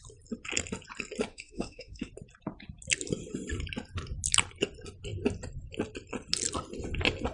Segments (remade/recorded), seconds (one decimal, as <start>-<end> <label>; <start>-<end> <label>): 0.0-1.3 recorded; 1.3-2.1 remade; 2.1-7.3 recorded

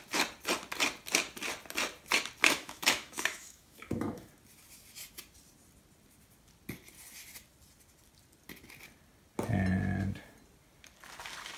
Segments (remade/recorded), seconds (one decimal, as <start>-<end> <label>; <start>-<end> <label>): 0.0-2.4 recorded; 2.4-4.3 remade; 4.3-11.6 recorded

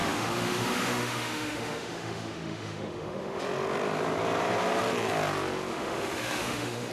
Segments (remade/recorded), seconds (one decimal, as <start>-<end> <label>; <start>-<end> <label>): 0.0-3.4 remade; 3.4-5.7 recorded; 5.7-6.9 remade

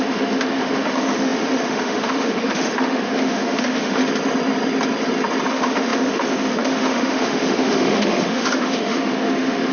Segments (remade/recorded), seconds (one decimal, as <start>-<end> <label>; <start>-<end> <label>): 0.0-4.0 remade; 4.0-5.5 recorded; 5.5-9.7 remade

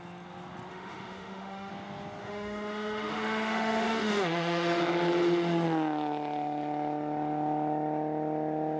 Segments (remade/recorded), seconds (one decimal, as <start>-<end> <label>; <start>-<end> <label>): 0.0-0.7 recorded; 0.7-1.7 remade; 1.7-2.2 recorded; 2.2-4.8 remade; 4.8-8.8 recorded

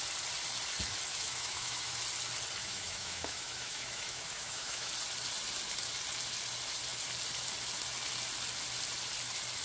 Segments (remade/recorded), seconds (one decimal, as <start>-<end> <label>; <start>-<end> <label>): 0.0-1.1 recorded; 1.1-2.0 remade; 2.0-2.6 recorded; 2.6-4.9 remade; 4.9-9.6 recorded

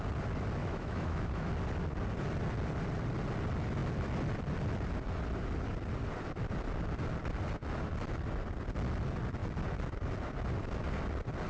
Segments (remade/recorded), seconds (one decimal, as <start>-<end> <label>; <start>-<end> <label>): 0.0-0.6 recorded; 0.6-1.5 remade; 1.5-11.5 recorded